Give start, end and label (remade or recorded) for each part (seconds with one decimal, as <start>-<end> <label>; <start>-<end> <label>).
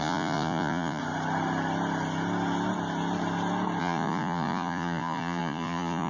0.0-1.0 remade; 1.0-3.8 recorded; 3.8-6.1 remade